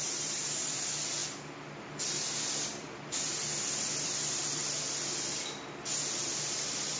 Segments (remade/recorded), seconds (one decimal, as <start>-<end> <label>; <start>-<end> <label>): 0.0-1.2 remade; 1.2-2.1 recorded; 2.1-4.6 remade; 4.6-6.5 recorded; 6.5-7.0 remade